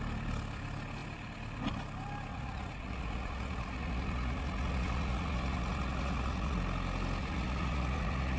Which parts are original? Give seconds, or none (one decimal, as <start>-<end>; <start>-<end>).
0.0-2.3; 6.6-7.2